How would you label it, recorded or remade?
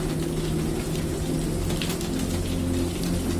recorded